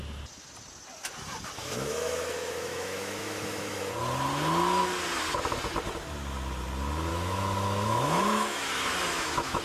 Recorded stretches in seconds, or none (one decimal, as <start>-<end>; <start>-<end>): 0.0-1.6; 3.8-7.1